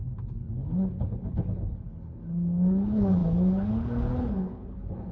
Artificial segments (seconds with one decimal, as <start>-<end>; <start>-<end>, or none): 0.0-5.1